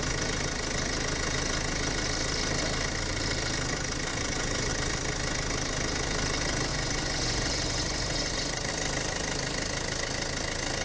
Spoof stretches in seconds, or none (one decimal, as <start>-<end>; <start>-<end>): 4.1-4.7; 6.7-8.7